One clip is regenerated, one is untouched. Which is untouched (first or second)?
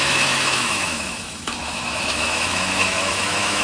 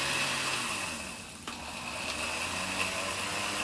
second